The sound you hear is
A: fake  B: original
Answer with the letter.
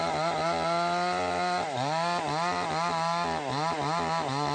B